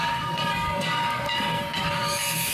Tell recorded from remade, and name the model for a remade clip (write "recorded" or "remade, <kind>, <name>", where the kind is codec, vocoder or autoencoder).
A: remade, codec, SNAC